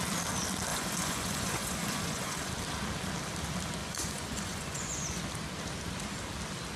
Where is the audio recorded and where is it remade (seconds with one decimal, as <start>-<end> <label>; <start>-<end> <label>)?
0.0-0.7 recorded; 0.7-2.5 remade; 2.5-3.8 recorded; 3.8-5.2 remade; 5.2-6.8 recorded

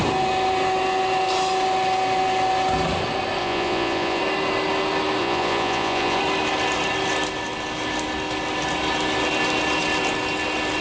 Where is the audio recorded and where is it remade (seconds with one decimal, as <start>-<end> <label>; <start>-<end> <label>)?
0.0-3.4 recorded; 3.4-4.2 remade; 4.2-5.2 recorded; 5.2-6.2 remade; 6.2-10.8 recorded

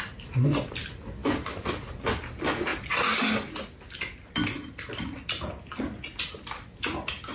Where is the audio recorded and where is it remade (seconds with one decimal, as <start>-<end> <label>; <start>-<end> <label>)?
0.0-7.3 recorded